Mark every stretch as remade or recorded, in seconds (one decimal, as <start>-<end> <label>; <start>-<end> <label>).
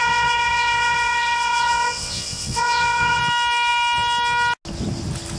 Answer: 0.0-3.2 remade; 3.2-5.4 recorded